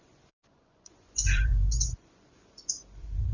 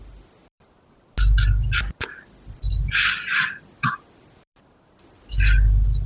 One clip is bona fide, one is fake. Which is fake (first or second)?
first